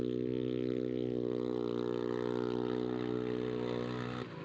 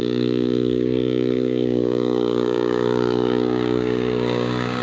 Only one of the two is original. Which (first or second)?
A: first